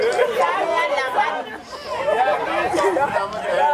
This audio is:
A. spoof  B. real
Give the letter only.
B